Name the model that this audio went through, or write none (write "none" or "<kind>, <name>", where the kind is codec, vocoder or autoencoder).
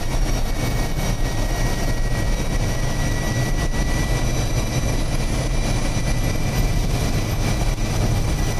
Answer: none